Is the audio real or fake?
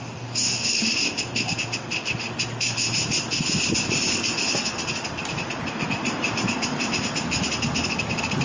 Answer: real